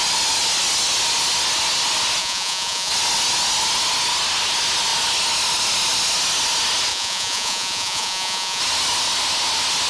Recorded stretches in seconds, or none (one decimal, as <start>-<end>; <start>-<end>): 0.0-2.2; 2.9-6.9; 8.6-9.9